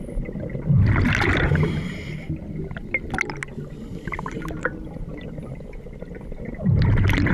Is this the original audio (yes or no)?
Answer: yes